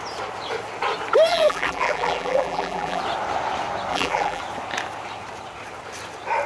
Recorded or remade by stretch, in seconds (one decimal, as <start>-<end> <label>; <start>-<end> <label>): 0.0-1.3 recorded; 1.3-3.0 remade; 3.0-3.9 recorded; 3.9-4.4 remade; 4.4-6.5 recorded